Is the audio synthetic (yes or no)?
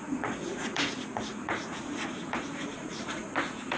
yes